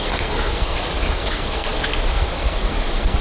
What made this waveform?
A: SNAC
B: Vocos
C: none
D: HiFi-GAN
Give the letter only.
A